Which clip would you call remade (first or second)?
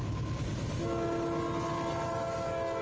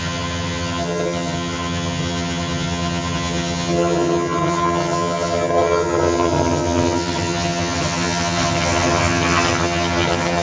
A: second